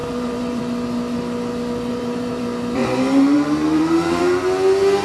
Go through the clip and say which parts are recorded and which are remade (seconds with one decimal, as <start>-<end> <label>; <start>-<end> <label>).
0.0-0.6 remade; 0.6-1.9 recorded; 1.9-2.4 remade; 2.4-2.8 recorded; 2.8-4.2 remade; 4.2-5.0 recorded